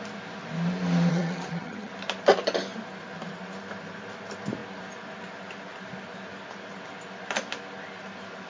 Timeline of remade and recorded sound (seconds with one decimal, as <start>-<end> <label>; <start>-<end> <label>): 0.0-1.1 recorded; 1.1-1.9 remade; 1.9-8.5 recorded